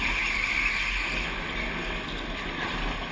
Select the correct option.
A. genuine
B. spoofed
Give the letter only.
A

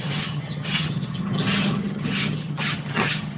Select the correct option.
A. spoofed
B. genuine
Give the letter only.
A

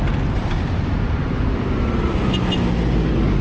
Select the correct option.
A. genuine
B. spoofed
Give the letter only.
A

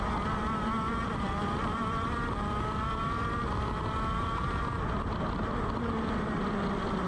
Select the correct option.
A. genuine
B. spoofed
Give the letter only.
A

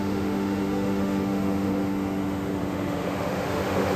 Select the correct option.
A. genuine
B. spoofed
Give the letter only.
B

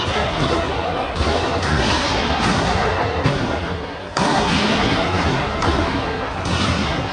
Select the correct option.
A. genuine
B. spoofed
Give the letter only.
B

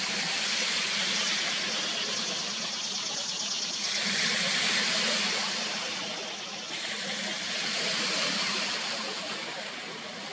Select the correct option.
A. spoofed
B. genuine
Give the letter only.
B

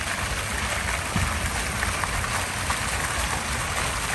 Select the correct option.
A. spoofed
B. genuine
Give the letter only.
B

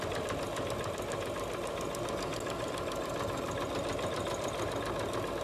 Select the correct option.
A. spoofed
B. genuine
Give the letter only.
B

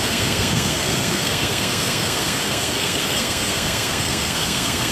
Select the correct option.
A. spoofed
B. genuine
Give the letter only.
A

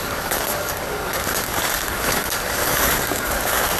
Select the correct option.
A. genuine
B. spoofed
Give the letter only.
B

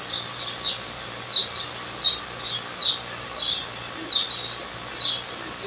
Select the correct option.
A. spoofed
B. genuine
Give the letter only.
B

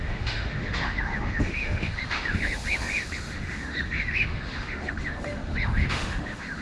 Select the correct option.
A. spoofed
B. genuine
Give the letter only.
A